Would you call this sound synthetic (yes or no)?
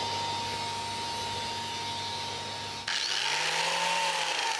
no